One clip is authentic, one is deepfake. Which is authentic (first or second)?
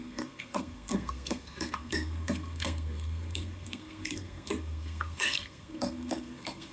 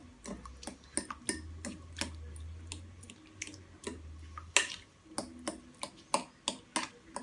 second